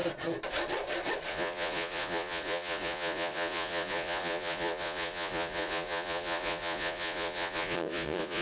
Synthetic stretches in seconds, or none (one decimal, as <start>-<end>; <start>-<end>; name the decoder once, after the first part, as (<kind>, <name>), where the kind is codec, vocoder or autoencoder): 1.3-8.4 (vocoder, Vocos)